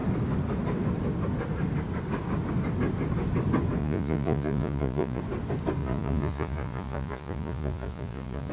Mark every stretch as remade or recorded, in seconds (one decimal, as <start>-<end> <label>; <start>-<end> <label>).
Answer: 0.0-3.8 recorded; 3.8-5.2 remade; 5.2-5.8 recorded; 5.8-8.5 remade